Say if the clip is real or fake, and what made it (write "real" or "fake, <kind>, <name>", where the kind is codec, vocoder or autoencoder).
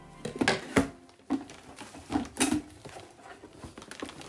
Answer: real